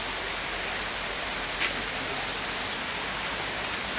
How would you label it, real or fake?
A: real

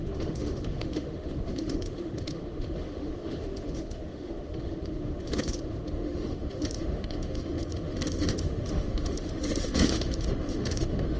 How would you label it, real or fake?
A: fake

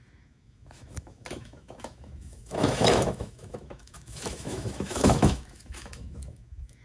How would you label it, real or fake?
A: fake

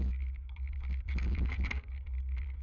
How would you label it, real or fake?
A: fake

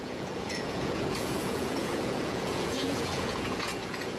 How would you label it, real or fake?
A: fake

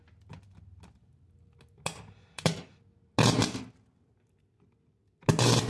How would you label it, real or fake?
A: real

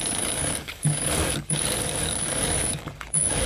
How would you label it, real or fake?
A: fake